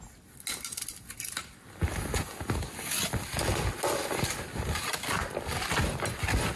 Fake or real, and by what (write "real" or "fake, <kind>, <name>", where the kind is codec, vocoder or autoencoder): real